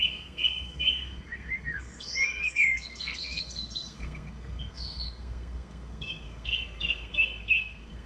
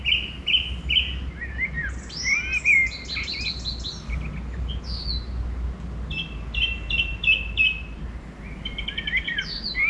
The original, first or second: second